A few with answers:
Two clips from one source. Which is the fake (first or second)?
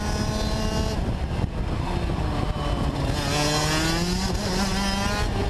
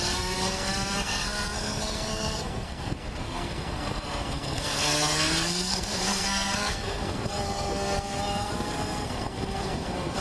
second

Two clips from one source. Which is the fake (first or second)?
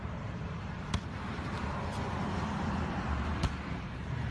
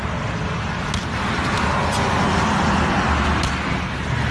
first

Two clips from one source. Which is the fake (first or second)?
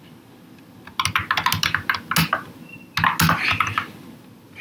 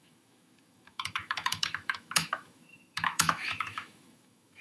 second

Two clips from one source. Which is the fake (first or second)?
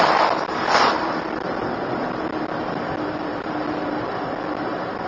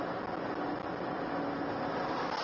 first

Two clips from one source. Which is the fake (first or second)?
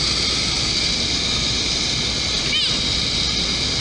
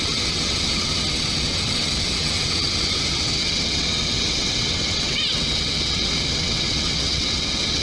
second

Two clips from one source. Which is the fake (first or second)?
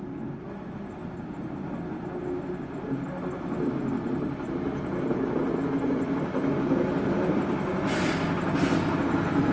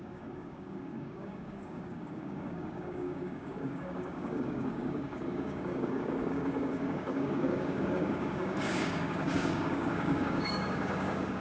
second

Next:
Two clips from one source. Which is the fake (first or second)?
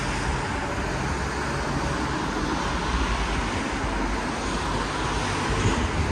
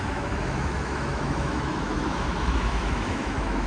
second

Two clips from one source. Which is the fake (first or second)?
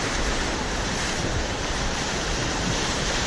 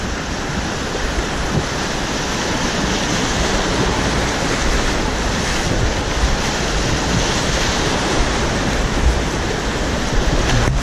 first